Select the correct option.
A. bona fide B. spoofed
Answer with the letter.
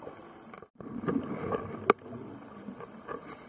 A